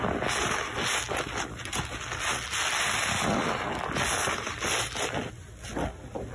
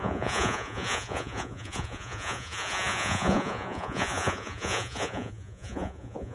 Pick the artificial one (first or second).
second